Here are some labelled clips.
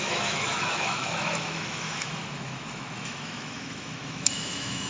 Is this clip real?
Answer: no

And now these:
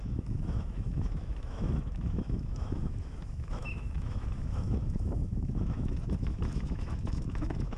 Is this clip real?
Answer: no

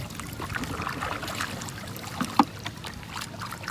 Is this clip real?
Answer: yes